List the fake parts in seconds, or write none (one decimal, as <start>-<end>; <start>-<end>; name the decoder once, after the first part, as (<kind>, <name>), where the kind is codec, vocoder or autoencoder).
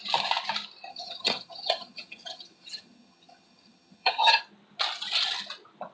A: 0.9-4.4 (vocoder, HiFi-GAN)